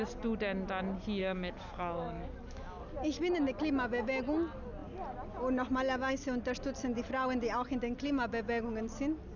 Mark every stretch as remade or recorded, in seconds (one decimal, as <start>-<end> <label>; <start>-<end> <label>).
0.0-1.2 recorded; 1.2-2.6 remade; 2.6-9.4 recorded